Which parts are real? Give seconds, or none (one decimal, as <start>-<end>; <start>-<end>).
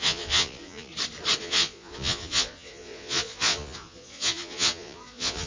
0.9-1.4